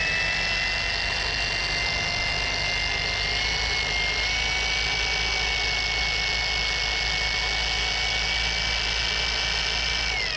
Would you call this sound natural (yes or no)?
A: yes